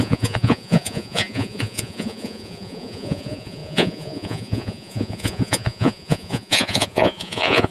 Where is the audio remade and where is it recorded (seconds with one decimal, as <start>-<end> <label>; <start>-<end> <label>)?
0.0-7.7 remade